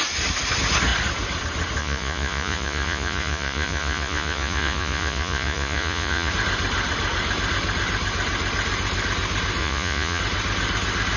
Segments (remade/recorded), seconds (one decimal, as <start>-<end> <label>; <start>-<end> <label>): 0.0-1.8 recorded; 1.8-6.3 remade; 6.3-9.6 recorded; 9.6-10.2 remade; 10.2-11.2 recorded